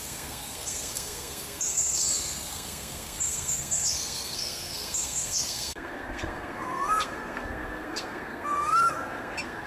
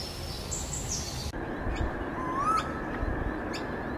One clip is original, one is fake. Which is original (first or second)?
second